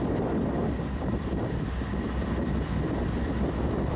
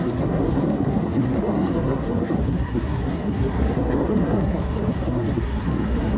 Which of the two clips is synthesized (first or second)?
second